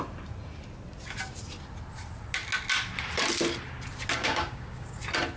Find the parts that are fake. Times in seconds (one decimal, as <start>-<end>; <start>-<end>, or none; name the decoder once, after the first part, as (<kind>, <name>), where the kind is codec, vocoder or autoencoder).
4.2-5.0 (codec, DAC)